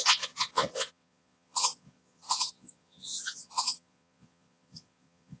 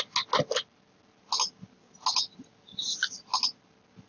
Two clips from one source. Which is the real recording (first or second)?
second